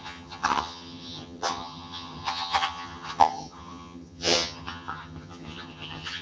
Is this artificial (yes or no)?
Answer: yes